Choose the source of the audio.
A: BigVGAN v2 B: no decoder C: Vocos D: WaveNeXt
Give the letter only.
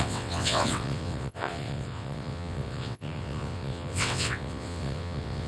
D